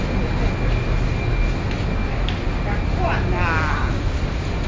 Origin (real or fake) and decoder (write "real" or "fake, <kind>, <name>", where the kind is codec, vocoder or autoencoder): real